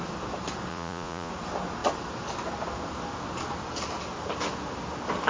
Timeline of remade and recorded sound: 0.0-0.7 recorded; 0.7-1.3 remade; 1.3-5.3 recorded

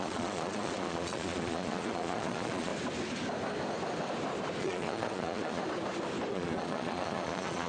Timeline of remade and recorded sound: 0.0-2.7 remade; 2.7-4.6 recorded; 4.6-5.6 remade; 5.6-6.3 recorded; 6.3-7.7 remade